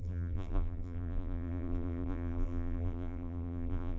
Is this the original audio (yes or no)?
no